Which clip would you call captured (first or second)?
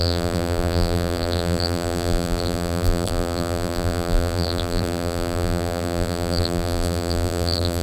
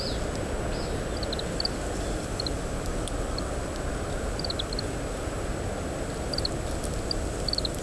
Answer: second